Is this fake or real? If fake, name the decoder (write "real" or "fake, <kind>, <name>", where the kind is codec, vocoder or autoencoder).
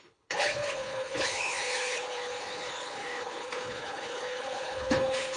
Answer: fake, codec, HILCodec